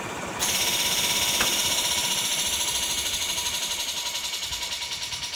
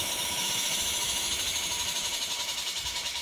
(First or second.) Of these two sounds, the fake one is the second